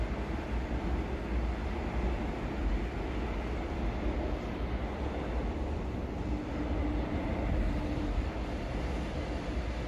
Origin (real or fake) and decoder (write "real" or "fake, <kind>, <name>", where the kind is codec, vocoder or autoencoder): real